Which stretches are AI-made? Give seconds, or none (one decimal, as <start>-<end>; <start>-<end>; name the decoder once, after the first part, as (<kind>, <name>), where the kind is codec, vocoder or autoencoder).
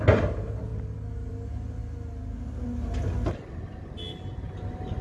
none